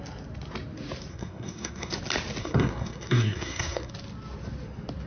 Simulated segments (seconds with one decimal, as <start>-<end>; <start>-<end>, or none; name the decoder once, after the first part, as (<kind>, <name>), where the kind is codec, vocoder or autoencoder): 1.1-1.9 (codec, SNAC); 2.4-3.9